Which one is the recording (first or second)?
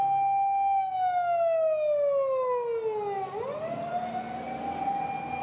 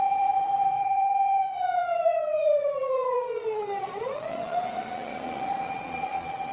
first